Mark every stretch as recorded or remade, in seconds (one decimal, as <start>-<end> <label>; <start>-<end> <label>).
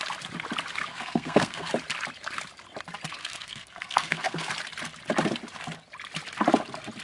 0.0-0.9 recorded; 0.9-1.7 remade; 1.7-3.2 recorded; 3.2-4.5 remade; 4.5-7.0 recorded